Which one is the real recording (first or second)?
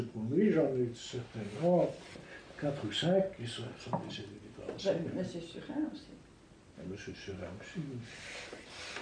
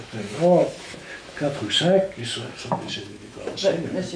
first